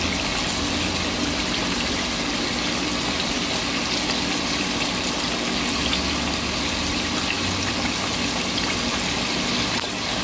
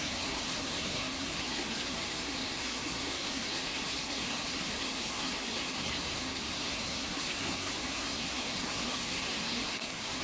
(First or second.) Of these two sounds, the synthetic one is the second